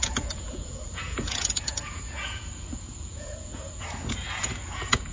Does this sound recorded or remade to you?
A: remade